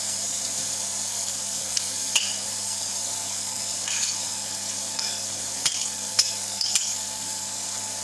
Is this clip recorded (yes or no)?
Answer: no